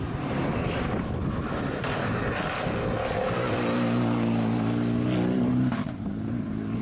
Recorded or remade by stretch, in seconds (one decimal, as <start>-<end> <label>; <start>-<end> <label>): 0.0-1.4 remade; 1.4-5.5 recorded; 5.5-6.8 remade